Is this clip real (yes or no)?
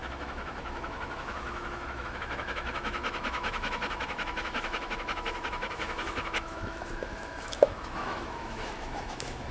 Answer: no